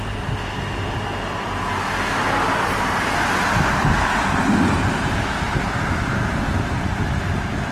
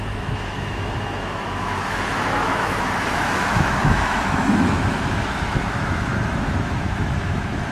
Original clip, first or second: first